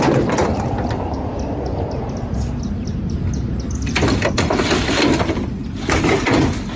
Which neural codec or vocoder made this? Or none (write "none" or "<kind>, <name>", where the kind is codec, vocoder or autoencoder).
none